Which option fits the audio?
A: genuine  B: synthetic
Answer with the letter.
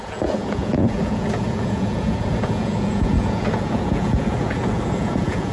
B